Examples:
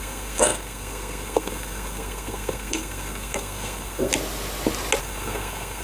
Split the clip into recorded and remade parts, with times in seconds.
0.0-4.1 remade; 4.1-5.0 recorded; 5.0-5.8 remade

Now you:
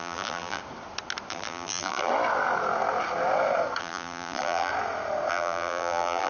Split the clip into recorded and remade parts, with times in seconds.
0.0-0.6 remade; 0.6-1.3 recorded; 1.3-2.1 remade; 2.1-3.8 recorded; 3.8-4.7 remade; 4.7-5.3 recorded; 5.3-6.3 remade

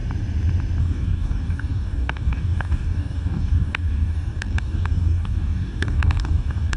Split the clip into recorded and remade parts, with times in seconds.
0.0-0.8 recorded; 0.8-6.8 remade

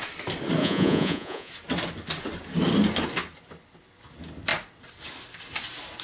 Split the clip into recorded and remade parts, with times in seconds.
0.0-0.6 recorded; 0.6-1.5 remade; 1.5-6.0 recorded

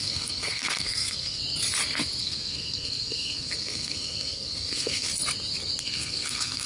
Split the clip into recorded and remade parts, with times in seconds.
0.0-1.4 remade; 1.4-2.2 recorded; 2.2-5.1 remade; 5.1-5.8 recorded; 5.8-6.7 remade